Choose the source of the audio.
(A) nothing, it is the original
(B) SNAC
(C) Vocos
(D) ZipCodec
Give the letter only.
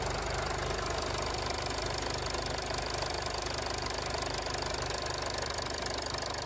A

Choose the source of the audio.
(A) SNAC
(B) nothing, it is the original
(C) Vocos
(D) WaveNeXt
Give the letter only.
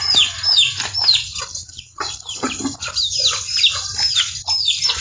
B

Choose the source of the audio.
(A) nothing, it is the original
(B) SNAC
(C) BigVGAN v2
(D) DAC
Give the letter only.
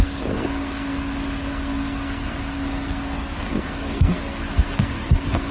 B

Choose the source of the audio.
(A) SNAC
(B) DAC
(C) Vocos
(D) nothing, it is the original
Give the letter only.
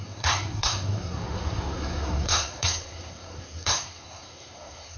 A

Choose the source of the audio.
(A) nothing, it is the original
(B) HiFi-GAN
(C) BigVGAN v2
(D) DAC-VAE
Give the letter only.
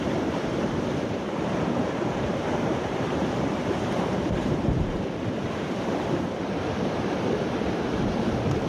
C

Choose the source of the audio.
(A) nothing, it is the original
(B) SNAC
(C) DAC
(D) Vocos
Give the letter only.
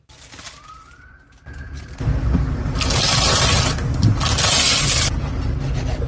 A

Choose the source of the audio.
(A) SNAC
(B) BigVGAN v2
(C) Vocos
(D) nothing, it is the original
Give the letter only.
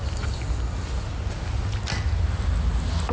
D